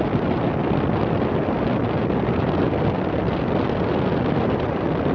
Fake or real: real